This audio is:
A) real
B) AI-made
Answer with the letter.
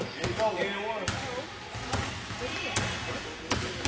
A